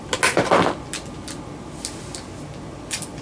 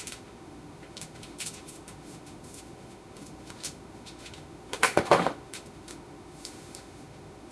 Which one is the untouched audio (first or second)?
first